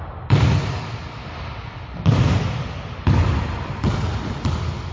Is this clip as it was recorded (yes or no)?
yes